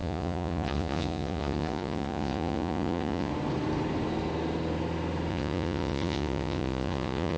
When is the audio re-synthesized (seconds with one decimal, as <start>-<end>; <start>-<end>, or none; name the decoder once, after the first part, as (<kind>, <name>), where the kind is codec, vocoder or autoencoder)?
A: 0.0-3.3 (vocoder, Vocos); 5.3-7.4